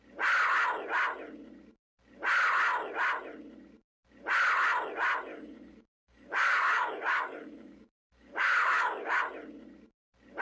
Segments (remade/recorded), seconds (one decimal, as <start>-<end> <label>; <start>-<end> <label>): 0.0-5.3 recorded; 5.3-9.2 remade; 9.2-10.4 recorded